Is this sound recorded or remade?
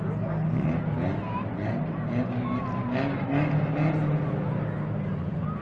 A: recorded